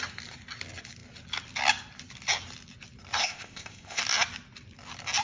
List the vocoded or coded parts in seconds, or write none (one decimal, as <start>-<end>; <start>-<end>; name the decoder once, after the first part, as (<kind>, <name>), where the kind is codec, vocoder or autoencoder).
3.2-4.0 (codec, ZipCodec)